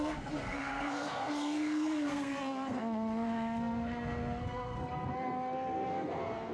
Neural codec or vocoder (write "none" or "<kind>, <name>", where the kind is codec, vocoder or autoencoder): codec, SNAC